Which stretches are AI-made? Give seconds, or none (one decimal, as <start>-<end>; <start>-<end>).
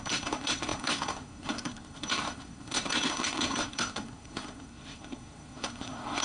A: 0.0-6.2